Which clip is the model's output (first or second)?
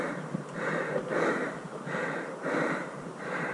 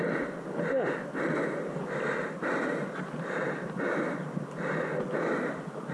first